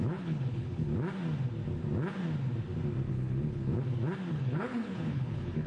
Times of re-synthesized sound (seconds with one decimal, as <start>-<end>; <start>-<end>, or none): 0.0-0.9; 3.1-3.7; 4.3-5.7